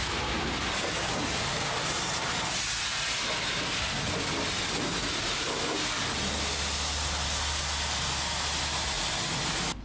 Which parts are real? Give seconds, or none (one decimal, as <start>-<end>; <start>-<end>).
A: 0.0-9.8